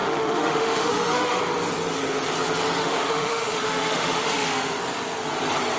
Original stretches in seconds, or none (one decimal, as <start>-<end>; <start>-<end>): 1.4-2.8; 4.8-5.8